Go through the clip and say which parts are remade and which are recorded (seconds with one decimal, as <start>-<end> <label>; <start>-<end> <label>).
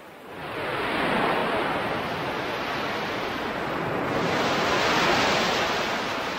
0.0-6.4 recorded